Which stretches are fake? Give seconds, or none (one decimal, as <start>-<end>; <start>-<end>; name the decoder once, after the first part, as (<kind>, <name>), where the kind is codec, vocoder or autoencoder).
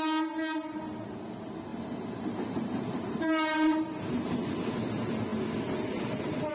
none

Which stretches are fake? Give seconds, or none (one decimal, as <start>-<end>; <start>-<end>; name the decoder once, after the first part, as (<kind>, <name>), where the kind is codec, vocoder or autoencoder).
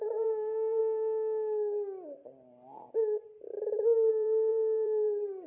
0.0-0.8 (vocoder, BigVGAN v2); 4.1-5.5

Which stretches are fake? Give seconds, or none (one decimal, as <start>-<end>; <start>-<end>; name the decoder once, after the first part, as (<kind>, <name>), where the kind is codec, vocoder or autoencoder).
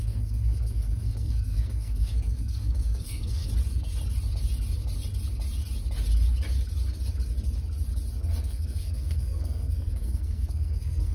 0.0-3.4 (codec, SNAC); 8.4-11.1